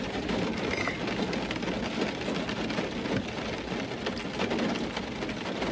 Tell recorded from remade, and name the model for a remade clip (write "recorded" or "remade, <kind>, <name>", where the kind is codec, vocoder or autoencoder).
recorded